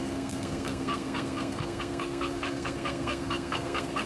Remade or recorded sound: remade